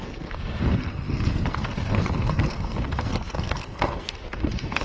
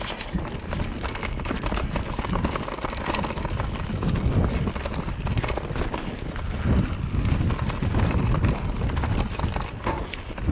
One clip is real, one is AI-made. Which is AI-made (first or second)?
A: first